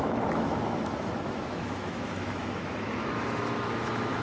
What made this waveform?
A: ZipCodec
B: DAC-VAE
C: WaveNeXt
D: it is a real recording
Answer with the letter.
B